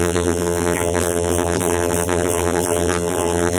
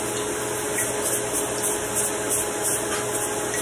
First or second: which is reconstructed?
first